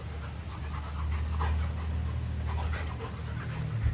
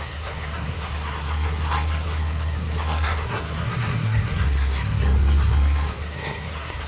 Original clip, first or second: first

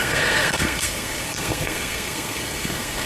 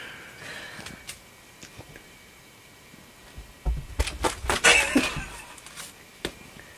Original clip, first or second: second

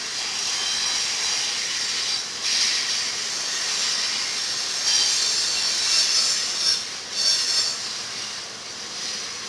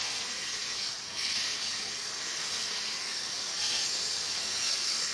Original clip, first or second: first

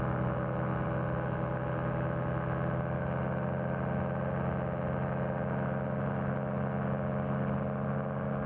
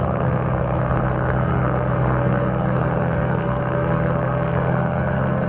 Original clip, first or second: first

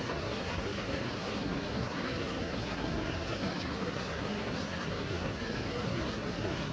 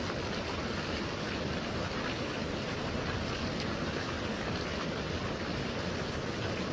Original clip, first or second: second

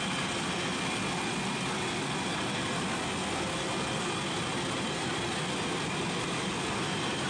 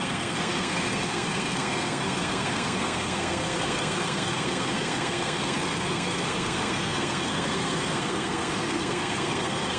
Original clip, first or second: first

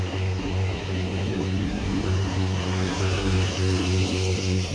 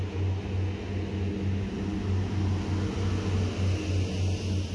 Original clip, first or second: second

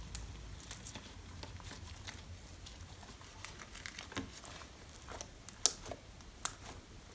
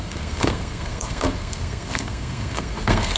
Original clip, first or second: first